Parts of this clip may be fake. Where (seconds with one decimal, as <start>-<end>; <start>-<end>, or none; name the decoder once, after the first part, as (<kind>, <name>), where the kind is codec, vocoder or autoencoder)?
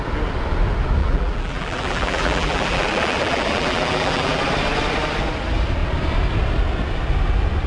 1.0-4.4 (vocoder, BigVGAN v2)